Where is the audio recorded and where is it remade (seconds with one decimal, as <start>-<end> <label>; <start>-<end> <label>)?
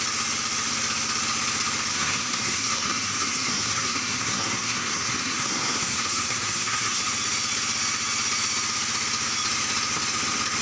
0.0-1.9 recorded; 1.9-7.0 remade; 7.0-10.6 recorded